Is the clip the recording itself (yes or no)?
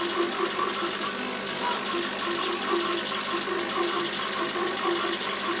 yes